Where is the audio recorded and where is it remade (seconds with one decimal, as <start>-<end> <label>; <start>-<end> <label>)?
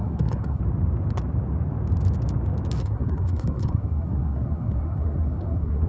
0.0-0.6 remade; 0.6-2.8 recorded; 2.8-5.9 remade